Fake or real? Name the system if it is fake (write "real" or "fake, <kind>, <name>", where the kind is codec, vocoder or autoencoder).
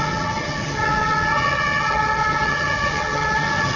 fake, vocoder, HiFi-GAN